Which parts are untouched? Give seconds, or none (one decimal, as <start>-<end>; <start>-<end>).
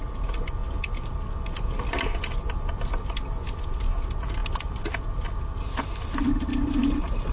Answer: 0.0-7.3